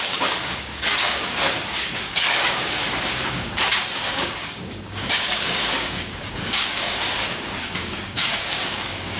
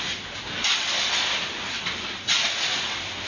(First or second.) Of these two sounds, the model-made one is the first